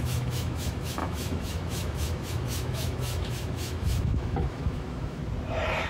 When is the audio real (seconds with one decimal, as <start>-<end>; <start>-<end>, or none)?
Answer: 5.2-5.9